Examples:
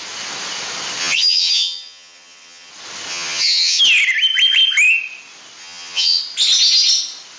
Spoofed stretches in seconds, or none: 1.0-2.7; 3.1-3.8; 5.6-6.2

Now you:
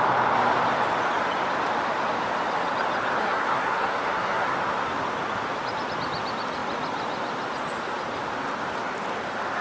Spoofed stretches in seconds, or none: 3.2-4.5